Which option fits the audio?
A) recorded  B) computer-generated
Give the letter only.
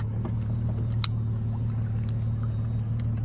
A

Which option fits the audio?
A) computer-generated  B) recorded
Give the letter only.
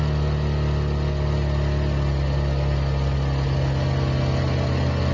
B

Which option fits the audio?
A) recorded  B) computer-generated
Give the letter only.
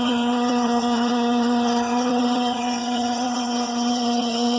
B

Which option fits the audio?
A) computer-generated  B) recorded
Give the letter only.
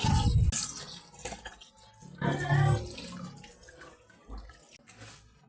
B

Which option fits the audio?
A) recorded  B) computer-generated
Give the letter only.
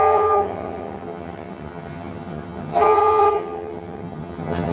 B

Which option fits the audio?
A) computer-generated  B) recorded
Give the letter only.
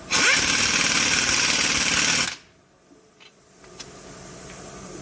B